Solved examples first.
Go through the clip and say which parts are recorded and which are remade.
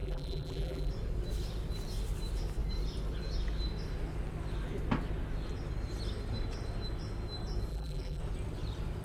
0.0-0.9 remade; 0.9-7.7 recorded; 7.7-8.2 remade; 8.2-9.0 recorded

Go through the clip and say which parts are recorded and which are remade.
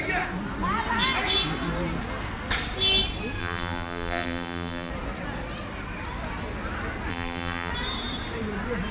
0.0-3.4 recorded; 3.4-4.9 remade; 4.9-7.1 recorded; 7.1-7.7 remade; 7.7-8.9 recorded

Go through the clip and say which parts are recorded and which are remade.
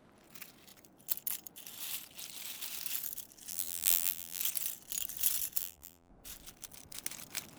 0.0-3.5 recorded; 3.5-4.4 remade; 4.4-5.6 recorded; 5.6-6.1 remade; 6.1-7.6 recorded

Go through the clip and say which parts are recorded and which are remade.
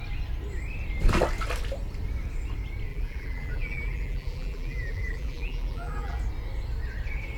0.0-2.9 recorded; 2.9-6.2 remade; 6.2-7.4 recorded